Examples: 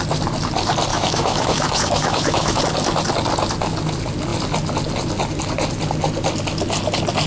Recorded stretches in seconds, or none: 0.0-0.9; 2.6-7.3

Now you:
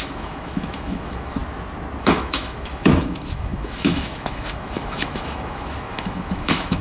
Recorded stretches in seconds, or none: 1.4-2.0

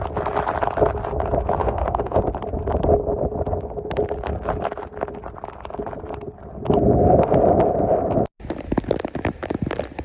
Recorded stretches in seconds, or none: 0.0-1.6; 2.2-10.0

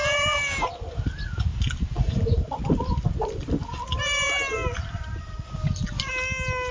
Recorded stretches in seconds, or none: 0.0-6.7

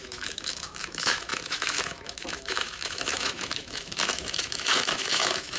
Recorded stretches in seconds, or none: none